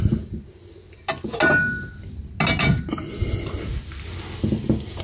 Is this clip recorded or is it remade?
recorded